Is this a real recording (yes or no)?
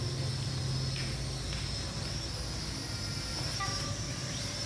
yes